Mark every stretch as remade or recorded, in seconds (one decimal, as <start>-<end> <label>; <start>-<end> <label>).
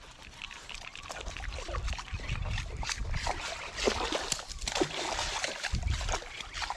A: 0.0-6.8 recorded